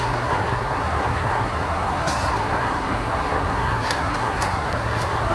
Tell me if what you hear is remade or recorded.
remade